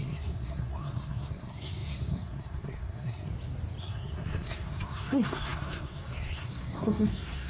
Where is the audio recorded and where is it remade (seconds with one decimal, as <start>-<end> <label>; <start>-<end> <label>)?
0.0-3.3 remade; 3.3-3.8 recorded; 3.8-7.5 remade